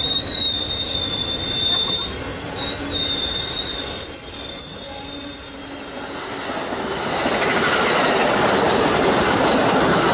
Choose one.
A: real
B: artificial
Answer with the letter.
A